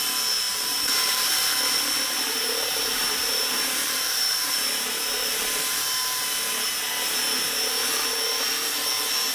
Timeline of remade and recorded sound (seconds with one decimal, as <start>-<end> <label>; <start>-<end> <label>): 0.0-0.5 recorded; 0.5-5.6 remade; 5.6-9.3 recorded